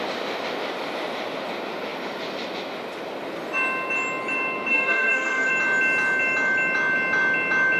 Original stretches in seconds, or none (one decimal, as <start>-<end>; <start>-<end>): 0.0-4.7; 5.5-7.8